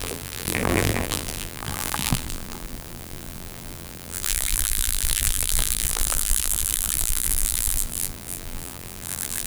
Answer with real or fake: fake